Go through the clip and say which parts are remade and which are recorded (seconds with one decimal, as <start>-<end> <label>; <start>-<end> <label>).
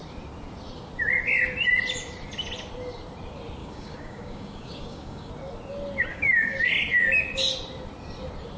0.0-3.6 recorded; 3.6-5.3 remade; 5.3-6.1 recorded; 6.1-6.7 remade; 6.7-8.6 recorded